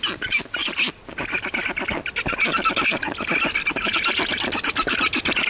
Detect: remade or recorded recorded